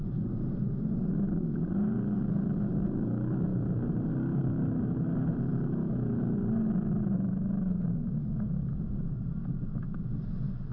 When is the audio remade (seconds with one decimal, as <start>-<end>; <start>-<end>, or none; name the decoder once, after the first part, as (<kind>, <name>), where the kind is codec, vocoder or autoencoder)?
3.5-4.1 (vocoder, BigVGAN v2)